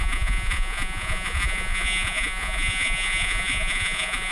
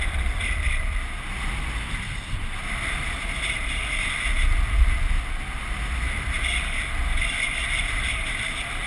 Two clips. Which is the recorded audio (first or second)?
second